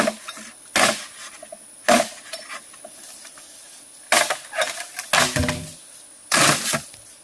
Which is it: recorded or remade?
recorded